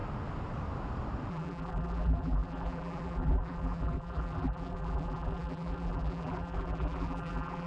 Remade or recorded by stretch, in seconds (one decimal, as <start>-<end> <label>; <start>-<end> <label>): 0.0-1.3 recorded; 1.3-7.7 remade